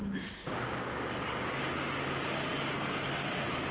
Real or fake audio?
fake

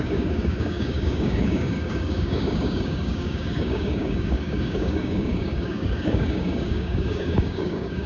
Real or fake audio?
fake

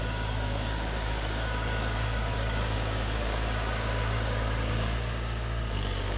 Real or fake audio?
fake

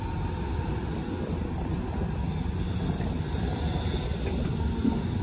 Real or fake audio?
real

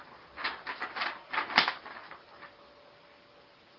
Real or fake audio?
real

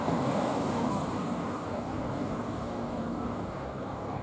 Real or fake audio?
fake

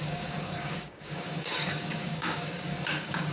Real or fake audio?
fake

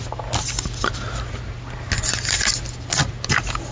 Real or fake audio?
real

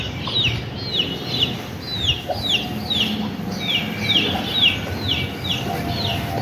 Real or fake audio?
real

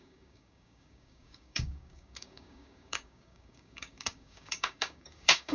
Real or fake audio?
fake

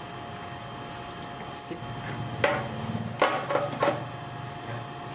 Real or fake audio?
real